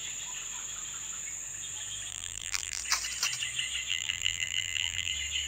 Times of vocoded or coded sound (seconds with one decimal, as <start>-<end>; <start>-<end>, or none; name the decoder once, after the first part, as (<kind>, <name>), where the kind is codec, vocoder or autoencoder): 2.1-2.8 (vocoder, BigVGAN v2); 3.9-5.1